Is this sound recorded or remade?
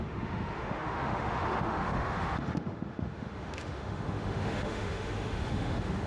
remade